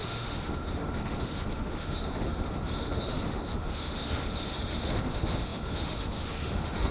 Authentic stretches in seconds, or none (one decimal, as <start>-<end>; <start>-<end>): none